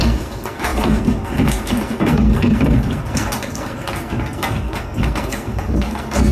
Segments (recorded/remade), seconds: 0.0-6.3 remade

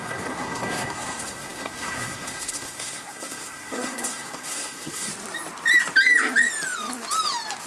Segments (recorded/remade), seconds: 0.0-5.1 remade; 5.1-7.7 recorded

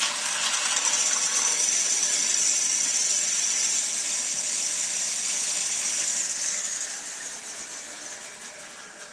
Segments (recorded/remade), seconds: 0.0-0.8 recorded; 0.8-2.4 remade; 2.4-4.7 recorded; 4.7-7.0 remade; 7.0-9.1 recorded

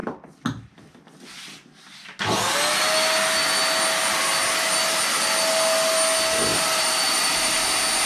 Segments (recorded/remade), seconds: 0.0-6.5 recorded; 6.5-7.6 remade; 7.6-8.1 recorded

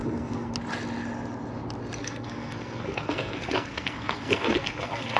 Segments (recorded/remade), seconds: 0.0-0.5 remade; 0.5-2.0 recorded; 2.0-5.2 remade